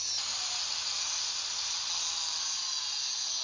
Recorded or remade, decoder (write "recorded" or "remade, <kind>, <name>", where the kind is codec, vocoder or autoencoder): recorded